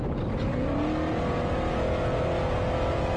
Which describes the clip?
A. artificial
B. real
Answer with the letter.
B